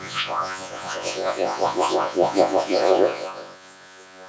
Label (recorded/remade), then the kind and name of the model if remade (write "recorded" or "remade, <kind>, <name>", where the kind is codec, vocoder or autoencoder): remade, vocoder, Vocos